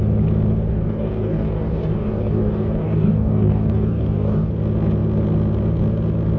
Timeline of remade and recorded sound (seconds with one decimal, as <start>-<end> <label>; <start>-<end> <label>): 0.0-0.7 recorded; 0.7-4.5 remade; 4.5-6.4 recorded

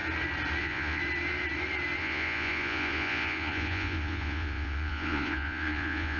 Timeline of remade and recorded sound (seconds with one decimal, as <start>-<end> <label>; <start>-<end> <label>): 0.0-0.6 recorded; 0.6-1.0 remade; 1.0-2.0 recorded; 2.0-6.2 remade

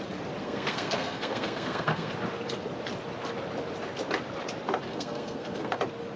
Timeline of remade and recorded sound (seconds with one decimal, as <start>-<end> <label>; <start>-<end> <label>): 0.0-0.4 recorded; 0.4-2.1 remade; 2.1-4.9 recorded; 4.9-5.8 remade; 5.8-6.2 recorded

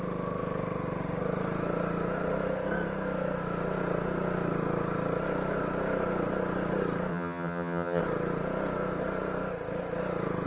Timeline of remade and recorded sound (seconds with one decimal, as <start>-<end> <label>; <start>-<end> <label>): 0.0-7.1 recorded; 7.1-8.0 remade; 8.0-10.5 recorded

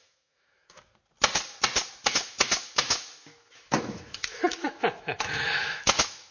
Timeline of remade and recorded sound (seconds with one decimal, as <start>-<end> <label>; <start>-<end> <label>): 0.0-0.9 remade; 0.9-2.1 recorded; 2.1-6.3 remade

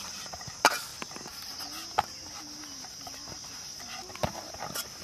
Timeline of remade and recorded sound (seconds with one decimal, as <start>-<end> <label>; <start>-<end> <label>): 0.0-0.9 remade; 0.9-2.6 recorded; 2.6-3.7 remade; 3.7-5.0 recorded

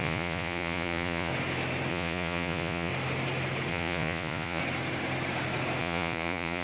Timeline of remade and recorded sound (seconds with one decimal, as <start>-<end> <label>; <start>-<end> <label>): 0.0-1.3 remade; 1.3-1.9 recorded; 1.9-2.9 remade; 2.9-3.7 recorded; 3.7-4.6 remade; 4.6-5.8 recorded; 5.8-6.6 remade